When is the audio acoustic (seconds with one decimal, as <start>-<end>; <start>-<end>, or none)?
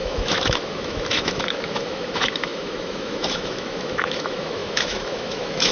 none